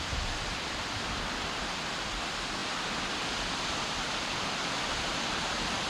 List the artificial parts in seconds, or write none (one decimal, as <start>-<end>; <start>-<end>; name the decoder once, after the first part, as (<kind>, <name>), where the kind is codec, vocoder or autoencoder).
0.0-5.9 (vocoder, BigVGAN v2)